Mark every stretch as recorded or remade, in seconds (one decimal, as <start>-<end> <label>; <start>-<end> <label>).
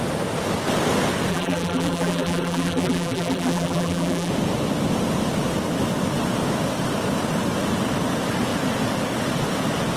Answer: 0.0-1.3 recorded; 1.3-4.3 remade; 4.3-10.0 recorded